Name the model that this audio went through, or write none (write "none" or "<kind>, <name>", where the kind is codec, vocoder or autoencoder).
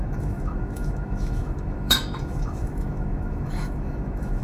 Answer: autoencoder, DAC-VAE